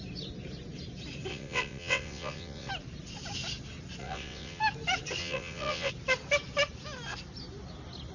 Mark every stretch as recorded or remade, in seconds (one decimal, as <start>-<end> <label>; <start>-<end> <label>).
0.0-1.3 recorded; 1.3-2.7 remade; 2.7-4.0 recorded; 4.0-4.6 remade; 4.6-5.2 recorded; 5.2-5.9 remade; 5.9-8.1 recorded